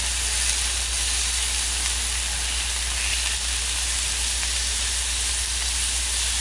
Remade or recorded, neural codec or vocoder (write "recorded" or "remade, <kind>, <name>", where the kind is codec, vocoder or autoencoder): recorded